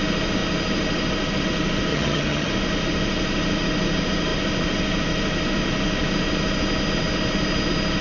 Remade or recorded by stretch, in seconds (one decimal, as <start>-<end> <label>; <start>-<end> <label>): 0.0-1.9 recorded; 1.9-2.5 remade; 2.5-8.0 recorded